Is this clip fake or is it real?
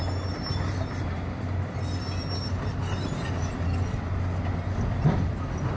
real